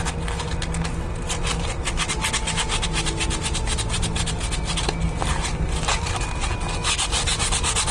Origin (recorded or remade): recorded